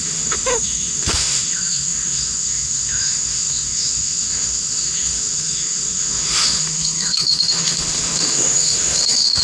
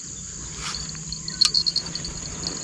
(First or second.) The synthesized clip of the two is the first